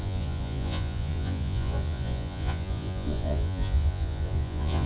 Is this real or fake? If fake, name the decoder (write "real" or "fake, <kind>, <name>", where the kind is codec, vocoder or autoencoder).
fake, vocoder, Vocos